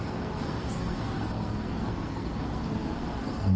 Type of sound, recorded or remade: remade